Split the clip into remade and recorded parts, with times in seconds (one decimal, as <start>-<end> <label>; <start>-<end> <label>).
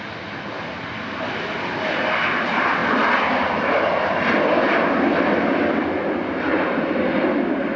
0.0-7.8 recorded